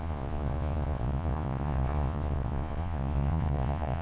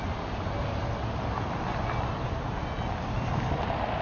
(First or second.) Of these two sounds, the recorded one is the second